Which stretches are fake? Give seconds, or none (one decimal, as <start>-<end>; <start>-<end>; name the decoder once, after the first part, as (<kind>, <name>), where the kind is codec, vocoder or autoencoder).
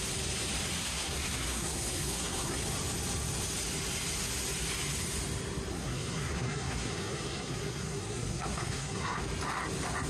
0.8-2.6 (codec, SNAC); 5.7-9.2